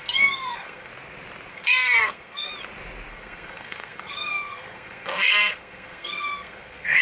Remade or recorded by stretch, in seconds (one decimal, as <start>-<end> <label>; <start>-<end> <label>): 0.0-0.9 remade; 0.9-1.5 recorded; 1.5-2.5 remade; 2.5-3.1 recorded; 3.1-7.0 remade